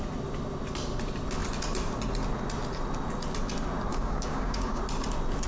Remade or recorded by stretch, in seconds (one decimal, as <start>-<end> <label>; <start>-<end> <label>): 0.0-3.9 recorded; 3.9-4.8 remade; 4.8-5.5 recorded